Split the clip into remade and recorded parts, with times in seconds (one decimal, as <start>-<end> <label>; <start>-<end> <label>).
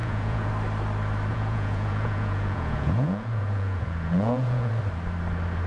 0.0-0.5 remade; 0.5-1.3 recorded; 1.3-4.7 remade; 4.7-5.7 recorded